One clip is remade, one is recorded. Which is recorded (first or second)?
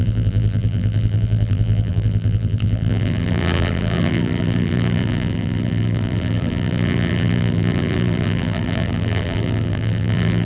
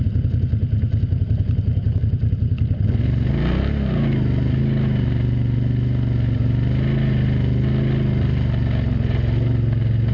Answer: second